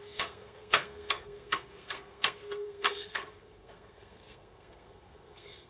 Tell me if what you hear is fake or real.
fake